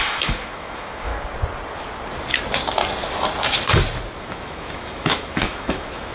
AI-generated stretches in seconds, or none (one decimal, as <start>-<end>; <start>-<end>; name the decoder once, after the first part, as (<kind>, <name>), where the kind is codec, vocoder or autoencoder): 0.0-1.1 (autoencoder, DAC-VAE); 4.2-6.1